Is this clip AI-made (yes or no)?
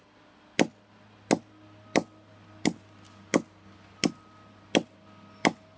no